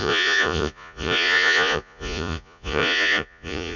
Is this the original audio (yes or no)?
no